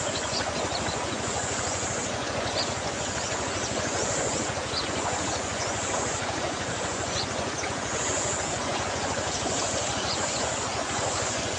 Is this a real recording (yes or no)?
no